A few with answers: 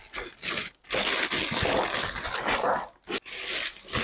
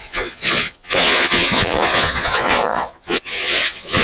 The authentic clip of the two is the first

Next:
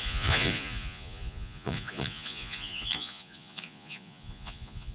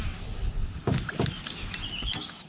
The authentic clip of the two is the second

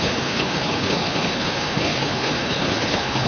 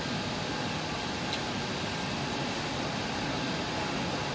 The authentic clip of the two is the second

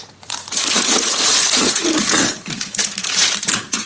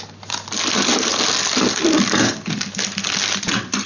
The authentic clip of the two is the second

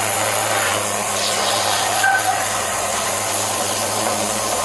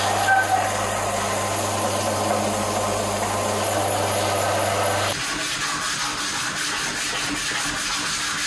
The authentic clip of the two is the second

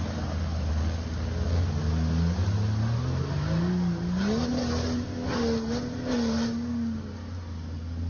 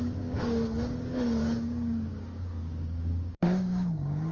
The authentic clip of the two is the first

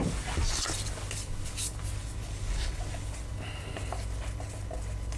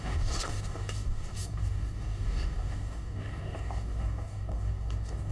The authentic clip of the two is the first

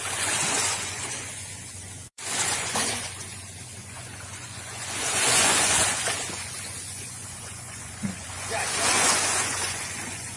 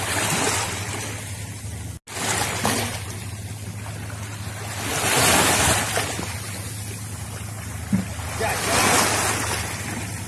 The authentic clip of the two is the second